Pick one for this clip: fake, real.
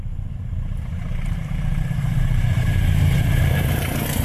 fake